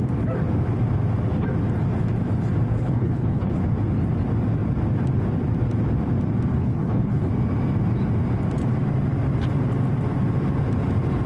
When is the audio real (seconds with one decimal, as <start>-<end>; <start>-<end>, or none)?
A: 0.0-2.7; 3.5-6.5; 7.3-11.3